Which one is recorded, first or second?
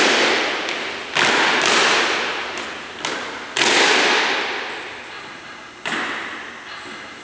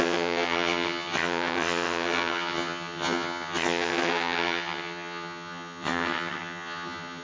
first